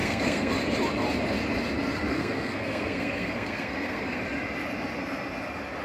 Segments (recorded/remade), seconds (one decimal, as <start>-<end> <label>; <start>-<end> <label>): 0.0-0.5 remade; 0.5-2.1 recorded; 2.1-4.2 remade; 4.2-5.8 recorded